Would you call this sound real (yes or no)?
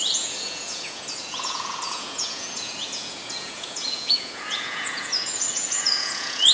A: no